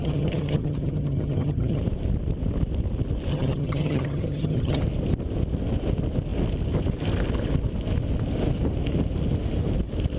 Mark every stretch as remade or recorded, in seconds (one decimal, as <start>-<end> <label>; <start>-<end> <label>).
0.0-1.8 remade; 1.8-3.3 recorded; 3.3-4.8 remade; 4.8-10.2 recorded